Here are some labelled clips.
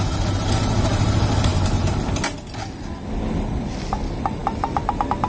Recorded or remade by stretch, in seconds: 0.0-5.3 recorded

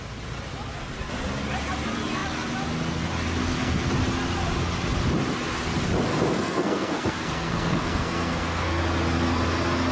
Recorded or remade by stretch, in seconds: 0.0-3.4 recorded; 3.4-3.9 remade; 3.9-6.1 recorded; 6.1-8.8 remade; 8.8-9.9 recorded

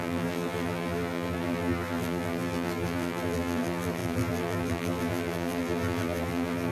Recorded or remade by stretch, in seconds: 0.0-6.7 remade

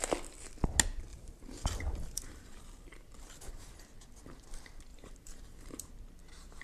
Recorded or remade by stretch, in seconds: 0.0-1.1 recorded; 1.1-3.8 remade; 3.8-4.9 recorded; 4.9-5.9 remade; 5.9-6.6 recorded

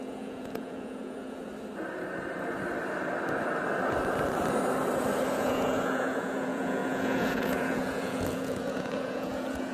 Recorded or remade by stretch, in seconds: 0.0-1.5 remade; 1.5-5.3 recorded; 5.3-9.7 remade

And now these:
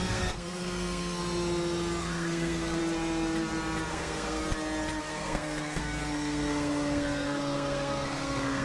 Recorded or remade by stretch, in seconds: 0.0-1.2 remade; 1.2-2.0 recorded; 2.0-2.8 remade; 2.8-3.9 recorded; 3.9-4.4 remade; 4.4-5.0 recorded; 5.0-8.6 remade

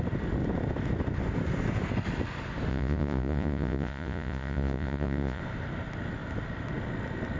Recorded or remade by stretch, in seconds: 0.0-2.7 recorded; 2.7-5.4 remade; 5.4-7.4 recorded